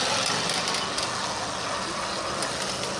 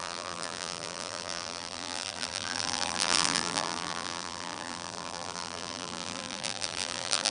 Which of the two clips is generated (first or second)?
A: second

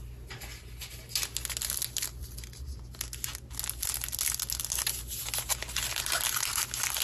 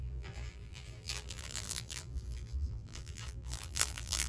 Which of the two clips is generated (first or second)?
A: second